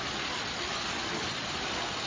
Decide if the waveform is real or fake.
real